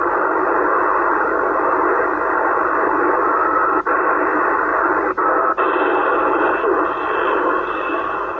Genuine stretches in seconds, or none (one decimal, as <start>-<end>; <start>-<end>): 0.0-8.4

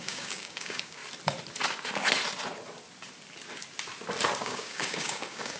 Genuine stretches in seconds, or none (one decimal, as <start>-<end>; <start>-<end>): 1.0-4.4

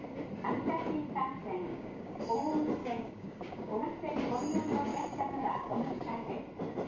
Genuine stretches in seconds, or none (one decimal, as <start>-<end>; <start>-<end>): 0.0-1.7; 2.2-2.8; 3.8-4.9; 6.3-6.9